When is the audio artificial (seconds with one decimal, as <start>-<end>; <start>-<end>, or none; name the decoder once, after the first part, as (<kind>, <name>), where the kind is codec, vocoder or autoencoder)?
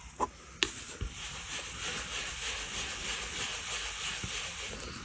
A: none